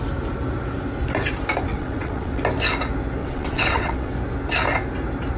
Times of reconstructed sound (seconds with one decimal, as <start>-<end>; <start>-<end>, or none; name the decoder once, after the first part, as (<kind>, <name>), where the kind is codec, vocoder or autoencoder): 1.7-2.4 (vocoder, WaveNeXt); 3.2-4.1